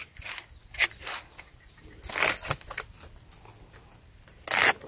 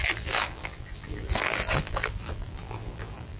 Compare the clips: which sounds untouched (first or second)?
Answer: first